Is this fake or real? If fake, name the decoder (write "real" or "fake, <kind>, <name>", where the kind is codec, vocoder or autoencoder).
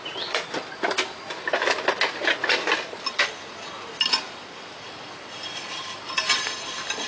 real